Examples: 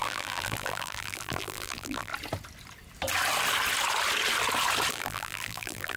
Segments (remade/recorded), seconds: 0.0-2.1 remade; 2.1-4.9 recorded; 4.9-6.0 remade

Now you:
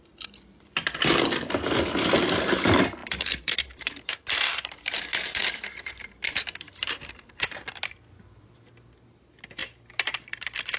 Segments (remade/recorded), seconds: 0.0-3.0 recorded; 3.0-7.6 remade; 7.6-10.8 recorded

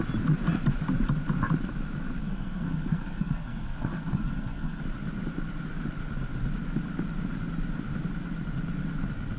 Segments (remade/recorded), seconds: 0.0-2.2 recorded; 2.2-4.8 remade; 4.8-9.4 recorded

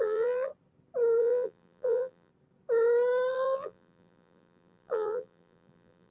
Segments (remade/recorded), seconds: 0.0-0.5 remade; 0.5-1.2 recorded; 1.2-2.3 remade; 2.3-3.3 recorded; 3.3-6.1 remade

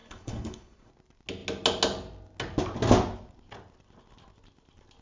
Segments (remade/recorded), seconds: 0.0-0.9 remade; 0.9-5.0 recorded

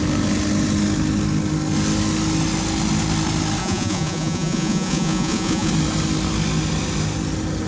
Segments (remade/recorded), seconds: 0.0-3.6 recorded; 3.6-5.7 remade; 5.7-7.7 recorded

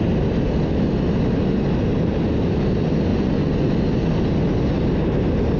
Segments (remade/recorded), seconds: 0.0-3.1 recorded; 3.1-3.7 remade; 3.7-5.6 recorded

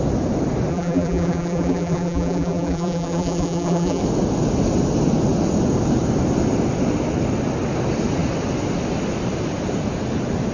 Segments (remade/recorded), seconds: 0.0-0.7 recorded; 0.7-4.0 remade; 4.0-10.5 recorded